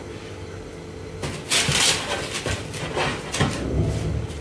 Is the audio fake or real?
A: real